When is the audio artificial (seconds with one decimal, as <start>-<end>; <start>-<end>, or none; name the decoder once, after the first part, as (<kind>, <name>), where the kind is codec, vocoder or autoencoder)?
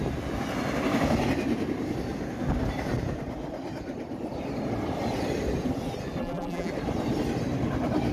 6.2-6.7 (vocoder, BigVGAN v2)